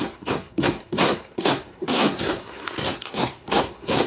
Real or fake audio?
fake